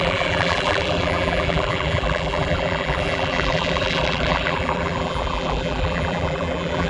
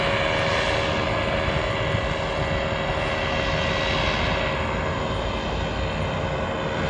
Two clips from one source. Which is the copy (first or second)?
first